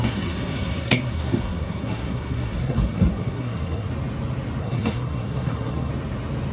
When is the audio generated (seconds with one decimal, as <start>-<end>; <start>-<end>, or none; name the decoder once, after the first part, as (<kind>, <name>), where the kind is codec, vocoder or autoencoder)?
0.0-3.9 (codec, SNAC); 4.6-5.9